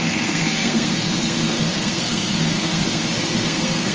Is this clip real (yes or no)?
no